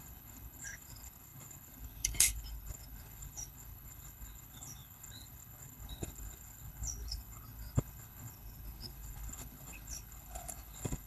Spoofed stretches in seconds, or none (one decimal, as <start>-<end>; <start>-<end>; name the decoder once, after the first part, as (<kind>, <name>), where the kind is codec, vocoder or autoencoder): 0.0-11.1 (codec, HILCodec)